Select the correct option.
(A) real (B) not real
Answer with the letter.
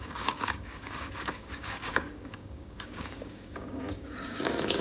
B